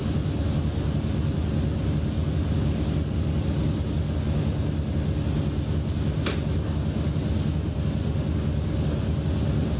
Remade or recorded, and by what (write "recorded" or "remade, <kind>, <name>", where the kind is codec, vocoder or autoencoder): recorded